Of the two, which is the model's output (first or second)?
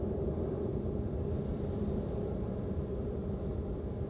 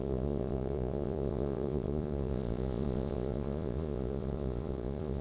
second